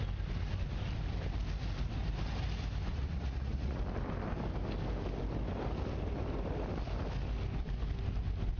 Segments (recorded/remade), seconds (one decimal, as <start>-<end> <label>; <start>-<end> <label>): 0.0-2.9 recorded; 2.9-3.8 remade; 3.8-8.6 recorded